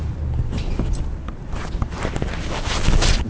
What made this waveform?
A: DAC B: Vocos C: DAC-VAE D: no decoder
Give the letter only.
D